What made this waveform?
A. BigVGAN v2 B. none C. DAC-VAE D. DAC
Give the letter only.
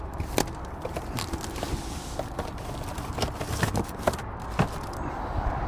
A